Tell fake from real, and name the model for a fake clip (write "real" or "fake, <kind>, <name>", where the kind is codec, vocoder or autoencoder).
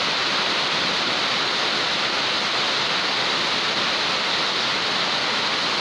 real